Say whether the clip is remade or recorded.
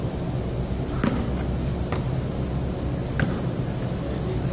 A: recorded